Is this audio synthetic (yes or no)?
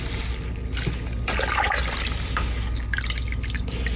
no